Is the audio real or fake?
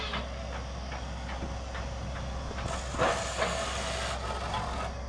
real